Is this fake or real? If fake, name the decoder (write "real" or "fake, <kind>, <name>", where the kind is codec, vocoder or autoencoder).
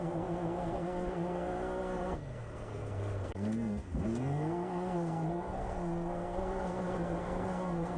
fake, codec, SNAC